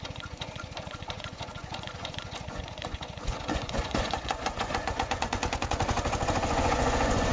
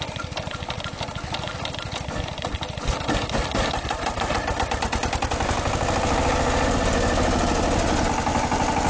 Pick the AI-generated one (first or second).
first